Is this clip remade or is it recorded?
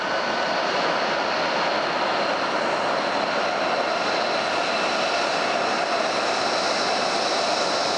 recorded